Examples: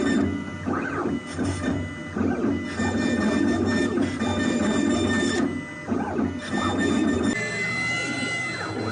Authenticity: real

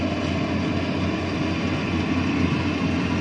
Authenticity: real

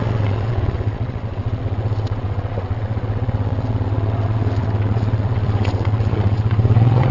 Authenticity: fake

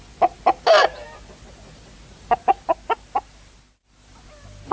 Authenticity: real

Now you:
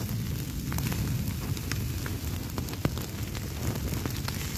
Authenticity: real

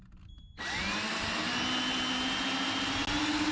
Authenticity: real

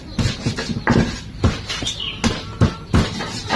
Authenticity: real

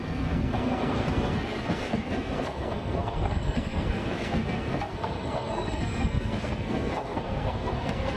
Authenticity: fake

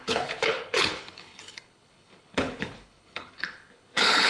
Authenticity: fake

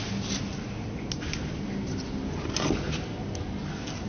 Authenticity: real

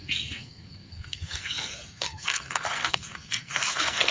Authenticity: fake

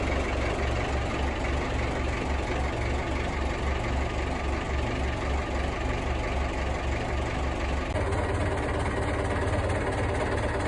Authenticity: real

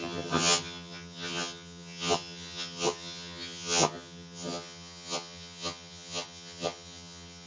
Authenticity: fake